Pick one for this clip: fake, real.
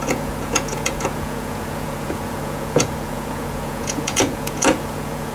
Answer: fake